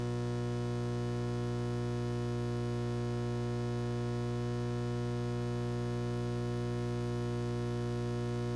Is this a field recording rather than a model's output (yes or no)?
yes